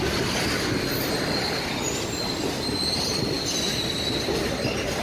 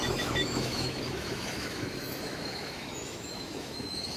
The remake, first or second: second